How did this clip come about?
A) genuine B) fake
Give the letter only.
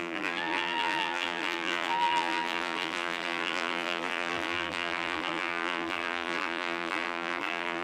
B